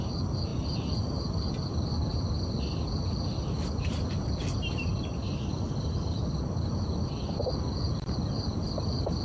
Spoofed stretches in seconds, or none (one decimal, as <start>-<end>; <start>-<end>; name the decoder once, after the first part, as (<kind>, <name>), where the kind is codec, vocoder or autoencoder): none